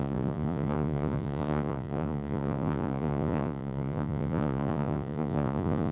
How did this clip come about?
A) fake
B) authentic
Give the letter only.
A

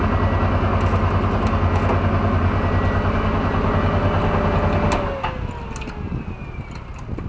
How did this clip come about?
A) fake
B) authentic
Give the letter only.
B